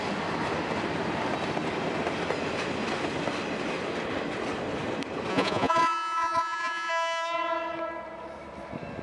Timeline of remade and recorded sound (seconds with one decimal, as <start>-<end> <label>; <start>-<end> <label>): 0.0-5.3 recorded; 5.3-6.9 remade; 6.9-9.0 recorded

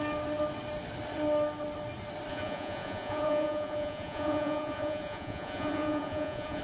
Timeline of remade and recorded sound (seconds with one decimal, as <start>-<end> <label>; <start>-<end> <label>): 0.0-2.3 recorded; 2.3-6.6 remade

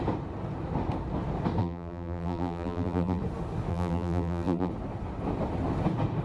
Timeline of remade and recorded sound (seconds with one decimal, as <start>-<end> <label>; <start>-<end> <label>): 0.0-1.6 recorded; 1.6-3.2 remade; 3.2-3.7 recorded; 3.7-4.7 remade; 4.7-6.2 recorded

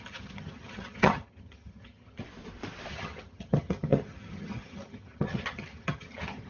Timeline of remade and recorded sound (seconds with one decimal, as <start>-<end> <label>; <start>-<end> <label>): 0.0-2.2 remade; 2.2-2.9 recorded; 2.9-6.5 remade

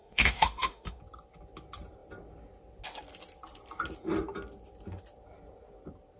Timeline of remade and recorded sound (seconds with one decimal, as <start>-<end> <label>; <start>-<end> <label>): 0.0-1.0 remade; 1.0-6.2 recorded

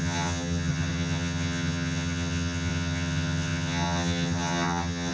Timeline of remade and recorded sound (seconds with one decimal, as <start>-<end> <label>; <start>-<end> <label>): 0.0-5.1 remade